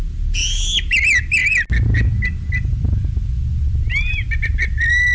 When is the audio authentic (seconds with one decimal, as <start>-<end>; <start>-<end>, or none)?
0.0-5.1